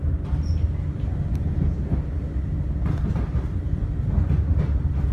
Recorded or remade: recorded